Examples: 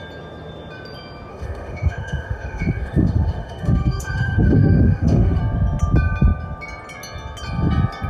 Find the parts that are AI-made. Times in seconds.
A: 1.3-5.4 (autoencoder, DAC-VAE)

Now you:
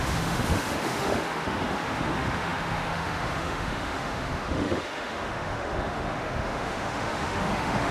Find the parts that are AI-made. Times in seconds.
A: 0.0-7.9 (autoencoder, DAC-VAE)

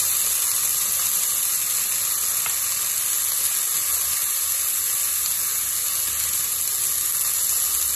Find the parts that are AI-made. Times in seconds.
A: none

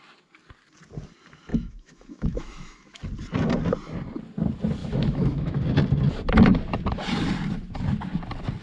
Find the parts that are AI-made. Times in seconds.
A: 1.5-3.0 (autoencoder, DAC-VAE); 4.8-5.6

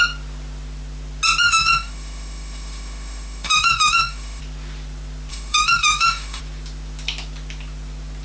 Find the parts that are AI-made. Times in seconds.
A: 1.4-4.4 (autoencoder, DAC-VAE); 5.3-6.4